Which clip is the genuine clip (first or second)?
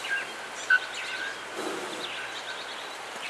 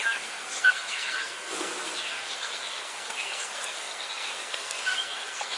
first